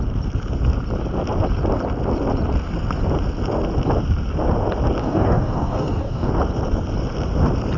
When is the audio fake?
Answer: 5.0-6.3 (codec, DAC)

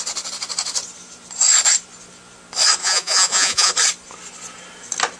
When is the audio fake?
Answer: 2.8-3.7 (vocoder, Vocos)

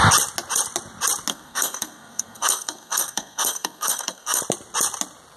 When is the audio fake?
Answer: 1.3-4.4 (codec, SNAC)

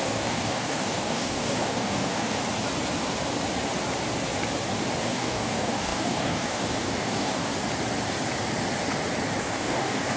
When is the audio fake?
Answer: 0.0-2.4 (codec, DAC); 5.0-7.5; 9.4-10.2

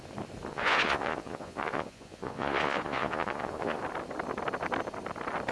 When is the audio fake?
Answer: 0.5-3.8 (vocoder, Vocos)